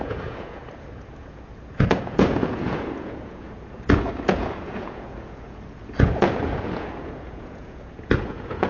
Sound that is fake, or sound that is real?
fake